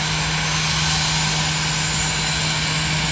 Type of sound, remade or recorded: recorded